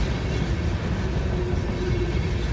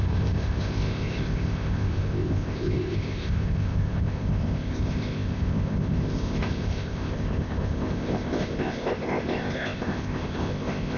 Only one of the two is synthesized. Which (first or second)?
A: second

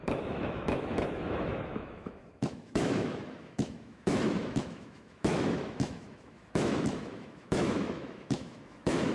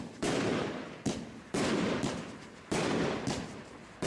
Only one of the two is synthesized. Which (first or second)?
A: first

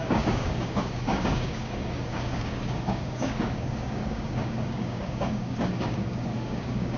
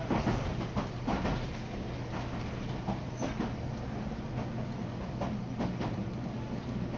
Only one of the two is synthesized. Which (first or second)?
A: first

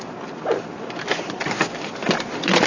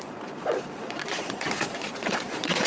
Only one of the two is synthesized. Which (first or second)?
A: second